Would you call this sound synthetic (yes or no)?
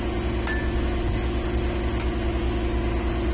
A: no